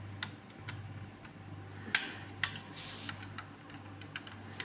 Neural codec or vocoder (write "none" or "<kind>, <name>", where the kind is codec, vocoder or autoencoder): none